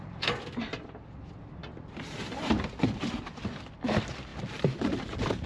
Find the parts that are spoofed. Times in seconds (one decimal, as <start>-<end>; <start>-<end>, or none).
1.6-2.7; 4.3-5.5